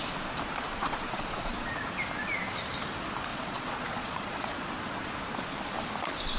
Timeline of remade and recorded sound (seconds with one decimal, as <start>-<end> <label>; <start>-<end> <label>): 0.0-0.7 recorded; 0.7-1.7 remade; 1.7-3.3 recorded; 3.3-4.7 remade; 4.7-6.4 recorded